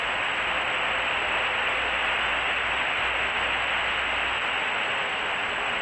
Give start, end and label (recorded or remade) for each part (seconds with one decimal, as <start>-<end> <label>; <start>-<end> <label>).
0.0-5.8 recorded